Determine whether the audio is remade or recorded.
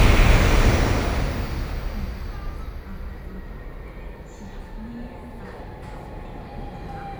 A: recorded